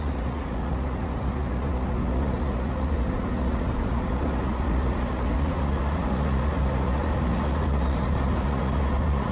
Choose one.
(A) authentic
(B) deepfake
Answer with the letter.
B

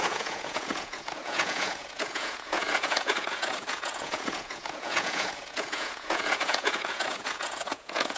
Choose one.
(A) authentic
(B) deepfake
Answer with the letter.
B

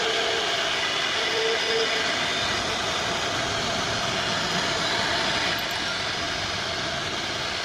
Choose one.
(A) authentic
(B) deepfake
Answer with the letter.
A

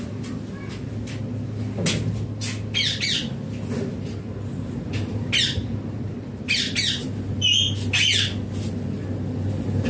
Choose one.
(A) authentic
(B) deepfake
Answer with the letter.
A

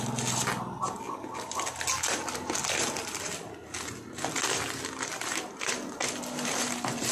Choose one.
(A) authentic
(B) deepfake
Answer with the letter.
A